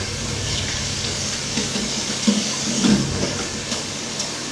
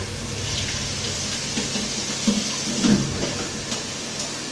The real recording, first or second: second